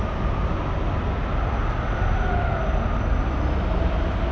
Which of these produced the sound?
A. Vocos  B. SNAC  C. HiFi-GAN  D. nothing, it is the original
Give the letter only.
D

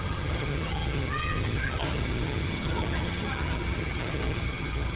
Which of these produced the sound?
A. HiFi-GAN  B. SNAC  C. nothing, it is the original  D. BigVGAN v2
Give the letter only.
A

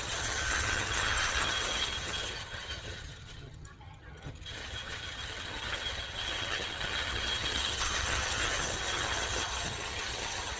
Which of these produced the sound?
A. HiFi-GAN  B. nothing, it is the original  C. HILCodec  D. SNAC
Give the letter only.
A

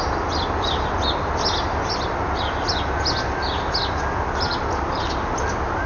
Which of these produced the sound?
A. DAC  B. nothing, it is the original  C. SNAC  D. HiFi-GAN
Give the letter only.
B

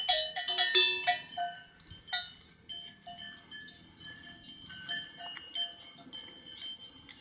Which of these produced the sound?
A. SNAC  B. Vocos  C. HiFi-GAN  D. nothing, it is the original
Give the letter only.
D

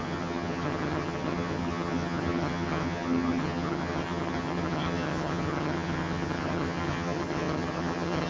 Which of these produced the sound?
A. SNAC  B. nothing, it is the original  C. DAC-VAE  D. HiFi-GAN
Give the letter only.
D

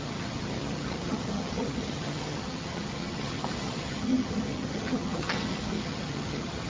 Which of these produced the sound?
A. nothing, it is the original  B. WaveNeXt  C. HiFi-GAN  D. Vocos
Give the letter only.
C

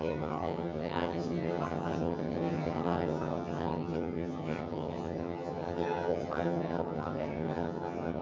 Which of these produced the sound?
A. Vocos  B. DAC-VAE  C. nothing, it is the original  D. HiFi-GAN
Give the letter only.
D